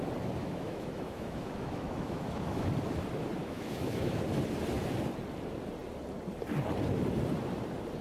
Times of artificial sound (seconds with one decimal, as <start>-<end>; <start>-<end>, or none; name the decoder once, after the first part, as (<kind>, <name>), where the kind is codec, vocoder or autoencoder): 0.4-2.7 (autoencoder, DAC-VAE); 3.4-4.2